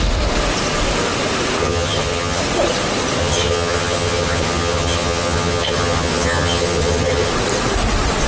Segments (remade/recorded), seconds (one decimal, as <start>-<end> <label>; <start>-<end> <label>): 0.0-1.6 recorded; 1.6-2.4 remade; 2.4-3.2 recorded; 3.2-7.3 remade; 7.3-8.3 recorded